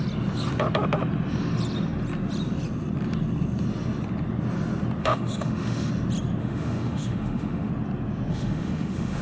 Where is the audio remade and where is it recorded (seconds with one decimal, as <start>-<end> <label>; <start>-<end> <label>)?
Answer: 0.0-5.0 recorded; 5.0-5.9 remade; 5.9-6.4 recorded; 6.4-7.7 remade; 7.7-8.3 recorded; 8.3-9.2 remade